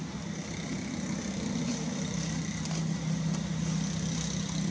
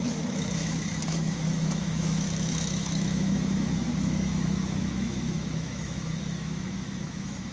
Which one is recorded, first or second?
first